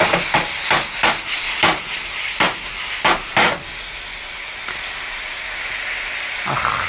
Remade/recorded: recorded